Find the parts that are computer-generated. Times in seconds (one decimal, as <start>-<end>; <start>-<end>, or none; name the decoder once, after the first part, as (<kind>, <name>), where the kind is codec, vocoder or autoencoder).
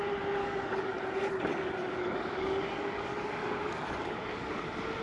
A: 0.4-1.0 (codec, DAC); 1.5-4.5